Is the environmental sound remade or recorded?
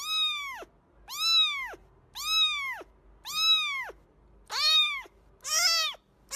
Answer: recorded